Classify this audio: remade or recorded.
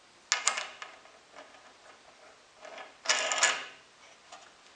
recorded